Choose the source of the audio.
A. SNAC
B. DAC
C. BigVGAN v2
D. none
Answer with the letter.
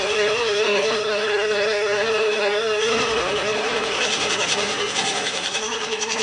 A